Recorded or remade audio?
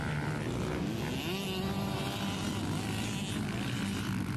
recorded